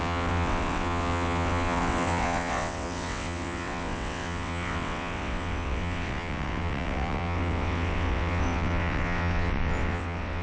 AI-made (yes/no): yes